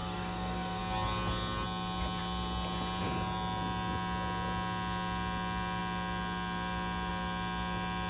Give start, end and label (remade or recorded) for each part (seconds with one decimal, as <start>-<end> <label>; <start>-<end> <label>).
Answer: 0.0-0.8 remade; 0.8-8.1 recorded